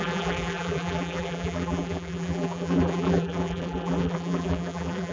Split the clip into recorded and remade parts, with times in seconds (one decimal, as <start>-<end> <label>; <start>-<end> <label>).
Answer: 0.0-5.1 remade